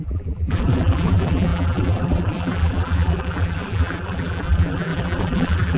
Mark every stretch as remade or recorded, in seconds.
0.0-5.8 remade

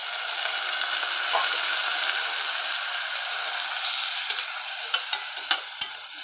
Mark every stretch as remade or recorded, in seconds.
0.0-6.2 remade

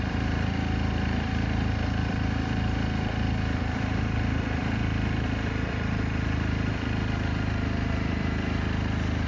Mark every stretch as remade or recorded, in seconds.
0.0-4.6 remade; 4.6-5.7 recorded; 5.7-9.3 remade

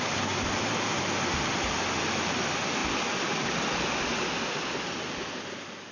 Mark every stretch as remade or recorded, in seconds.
0.0-5.9 recorded

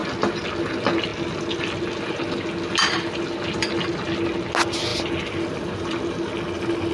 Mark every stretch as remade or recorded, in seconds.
0.0-6.9 recorded

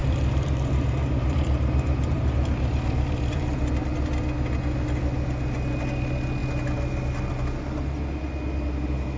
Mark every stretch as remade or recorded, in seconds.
0.0-3.7 remade; 3.7-9.2 recorded